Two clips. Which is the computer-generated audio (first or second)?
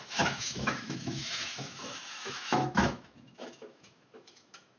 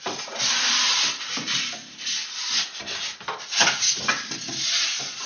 first